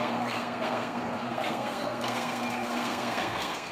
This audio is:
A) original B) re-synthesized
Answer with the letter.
B